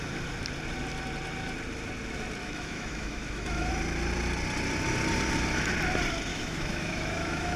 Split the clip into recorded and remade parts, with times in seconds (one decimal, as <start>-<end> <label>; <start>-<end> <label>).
0.0-2.4 recorded; 2.4-3.7 remade; 3.7-6.3 recorded; 6.3-7.6 remade